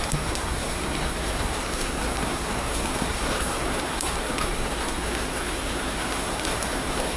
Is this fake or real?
fake